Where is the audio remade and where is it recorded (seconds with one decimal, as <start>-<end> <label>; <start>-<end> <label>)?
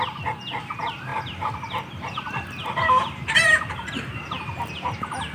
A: 0.0-1.1 recorded; 1.1-4.1 remade; 4.1-5.3 recorded